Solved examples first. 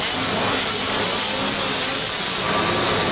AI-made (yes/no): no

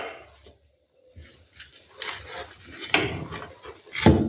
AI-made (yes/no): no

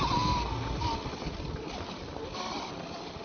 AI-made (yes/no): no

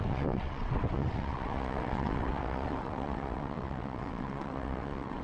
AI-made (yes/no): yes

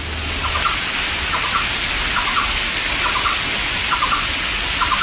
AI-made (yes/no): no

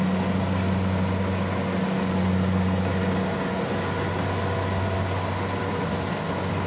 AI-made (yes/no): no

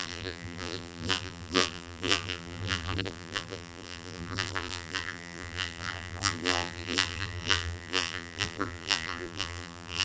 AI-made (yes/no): yes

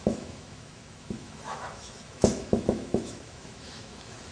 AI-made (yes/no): yes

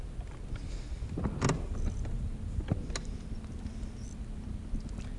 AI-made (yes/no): no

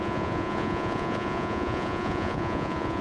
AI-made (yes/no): yes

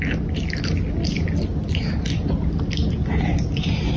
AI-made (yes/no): no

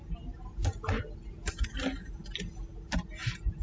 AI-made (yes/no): no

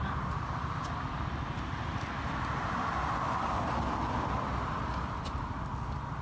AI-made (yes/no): no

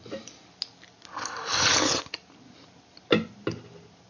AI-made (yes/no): no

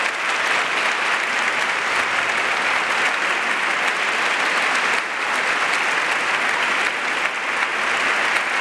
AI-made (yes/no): no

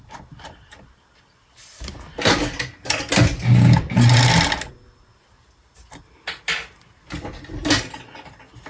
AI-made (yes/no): no